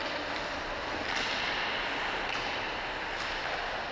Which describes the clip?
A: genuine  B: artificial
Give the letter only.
A